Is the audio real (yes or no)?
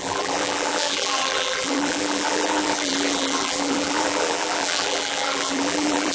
no